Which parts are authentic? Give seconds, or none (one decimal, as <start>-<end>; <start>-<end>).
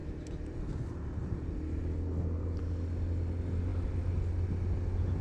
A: 0.0-5.2